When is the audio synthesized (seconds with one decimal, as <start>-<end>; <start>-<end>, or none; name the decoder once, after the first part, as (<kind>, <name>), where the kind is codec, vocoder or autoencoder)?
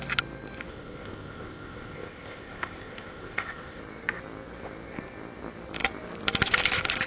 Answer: 0.7-3.8 (codec, ZipCodec)